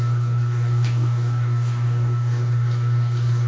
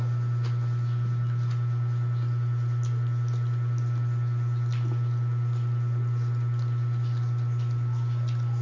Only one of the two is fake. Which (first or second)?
first